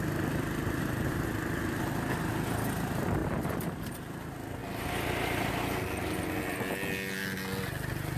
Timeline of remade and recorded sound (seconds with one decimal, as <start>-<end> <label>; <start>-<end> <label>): 0.0-8.2 recorded